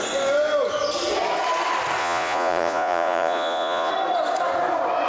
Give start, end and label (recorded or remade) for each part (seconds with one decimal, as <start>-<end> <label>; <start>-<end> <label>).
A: 0.0-2.0 recorded; 2.0-3.9 remade; 3.9-5.1 recorded